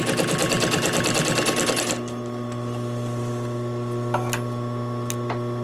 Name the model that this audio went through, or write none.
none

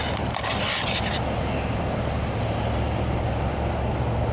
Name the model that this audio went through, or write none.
none